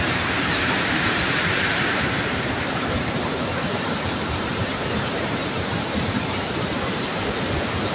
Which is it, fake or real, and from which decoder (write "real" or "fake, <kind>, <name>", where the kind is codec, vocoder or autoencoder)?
fake, vocoder, BigVGAN v2